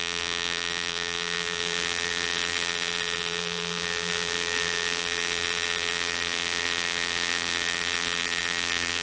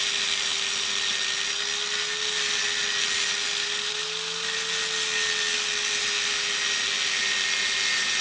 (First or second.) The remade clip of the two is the first